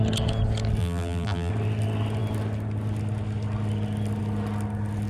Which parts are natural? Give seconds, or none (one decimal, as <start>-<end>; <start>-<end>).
0.0-0.8; 1.5-5.1